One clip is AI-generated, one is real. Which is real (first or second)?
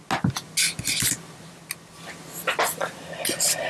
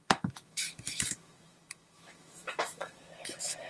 first